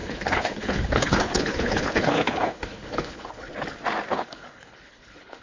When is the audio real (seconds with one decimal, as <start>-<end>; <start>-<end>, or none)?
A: 3.5-4.1